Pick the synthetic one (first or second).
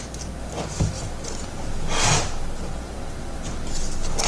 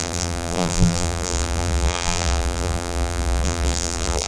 second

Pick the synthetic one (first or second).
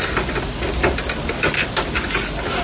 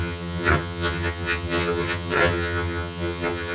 second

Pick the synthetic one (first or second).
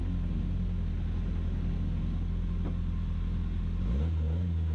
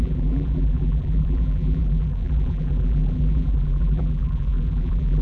second